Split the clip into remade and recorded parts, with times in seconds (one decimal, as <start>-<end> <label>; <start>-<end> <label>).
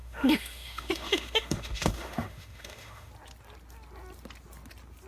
0.0-3.1 remade; 3.1-5.1 recorded